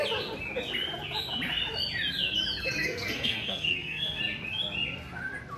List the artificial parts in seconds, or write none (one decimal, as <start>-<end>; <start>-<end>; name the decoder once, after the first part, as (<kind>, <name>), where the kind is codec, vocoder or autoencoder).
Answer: 2.6-4.2 (codec, SNAC)